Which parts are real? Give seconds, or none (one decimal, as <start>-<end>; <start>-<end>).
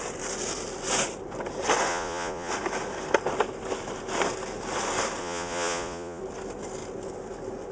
0.0-1.9; 2.5-5.2; 6.2-7.7